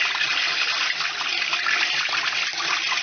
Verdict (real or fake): real